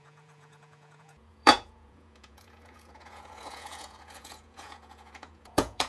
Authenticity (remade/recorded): remade